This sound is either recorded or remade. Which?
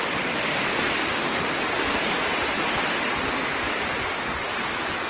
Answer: recorded